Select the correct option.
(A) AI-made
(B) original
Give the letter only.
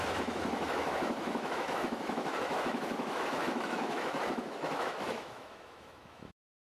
A